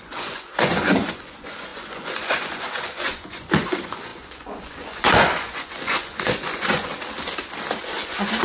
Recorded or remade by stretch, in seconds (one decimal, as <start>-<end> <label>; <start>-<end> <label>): 0.0-6.9 remade; 6.9-7.8 recorded; 7.8-8.4 remade